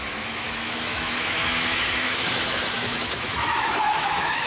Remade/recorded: remade